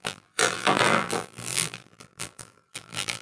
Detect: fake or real fake